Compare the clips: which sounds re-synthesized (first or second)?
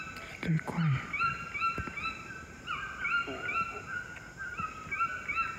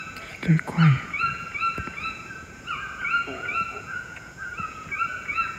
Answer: second